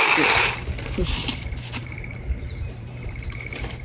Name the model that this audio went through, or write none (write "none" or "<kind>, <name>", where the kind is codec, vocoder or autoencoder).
vocoder, BigVGAN v2